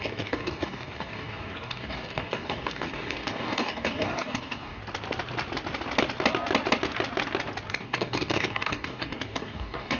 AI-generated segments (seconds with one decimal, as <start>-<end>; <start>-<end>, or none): 0.0-4.8; 7.7-10.0